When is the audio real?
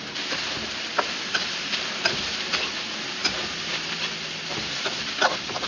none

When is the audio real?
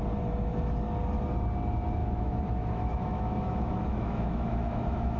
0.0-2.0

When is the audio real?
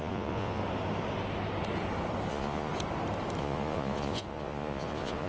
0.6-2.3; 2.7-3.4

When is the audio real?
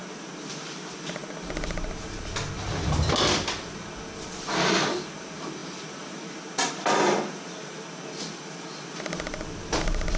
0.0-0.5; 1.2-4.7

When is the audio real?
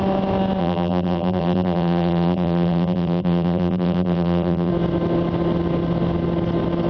0.0-0.6; 4.7-6.9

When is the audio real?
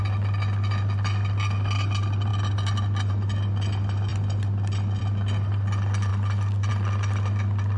0.0-7.8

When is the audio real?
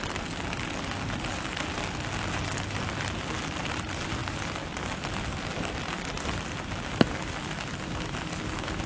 0.0-8.9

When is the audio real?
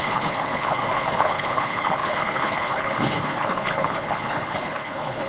none